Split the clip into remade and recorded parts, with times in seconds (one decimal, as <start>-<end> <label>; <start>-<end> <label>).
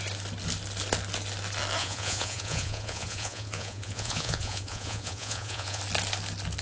0.0-1.8 recorded; 1.8-5.8 remade; 5.8-6.6 recorded